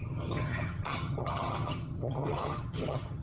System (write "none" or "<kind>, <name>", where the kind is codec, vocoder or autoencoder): vocoder, HiFi-GAN